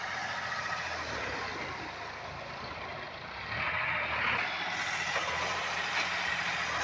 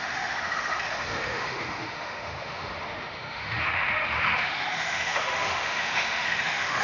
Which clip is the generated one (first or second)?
second